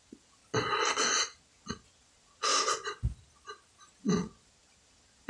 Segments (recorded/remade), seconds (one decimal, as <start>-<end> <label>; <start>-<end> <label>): 0.0-0.4 remade; 0.4-0.9 recorded; 0.9-2.5 remade; 2.5-4.0 recorded; 4.0-5.3 remade